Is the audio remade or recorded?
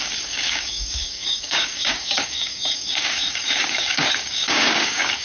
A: remade